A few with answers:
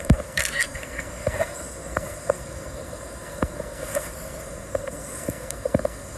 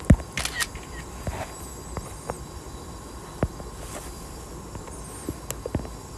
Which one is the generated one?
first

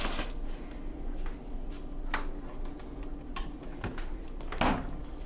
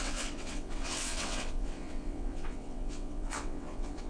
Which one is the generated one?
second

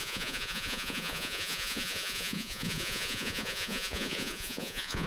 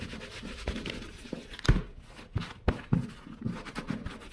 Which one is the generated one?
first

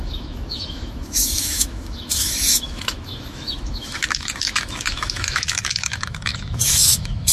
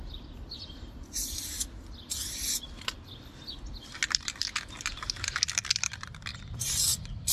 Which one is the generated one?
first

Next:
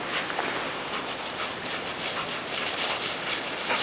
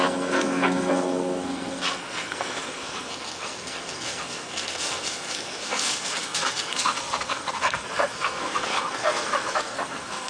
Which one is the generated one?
second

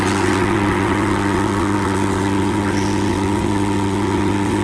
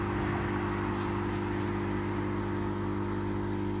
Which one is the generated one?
first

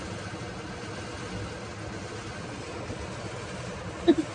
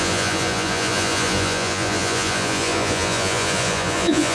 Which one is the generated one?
second